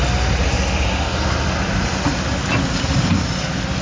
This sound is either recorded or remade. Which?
recorded